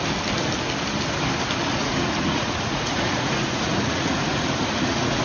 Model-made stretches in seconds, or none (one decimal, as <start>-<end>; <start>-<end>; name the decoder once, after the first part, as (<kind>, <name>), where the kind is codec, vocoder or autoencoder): 1.8-5.2 (vocoder, Vocos)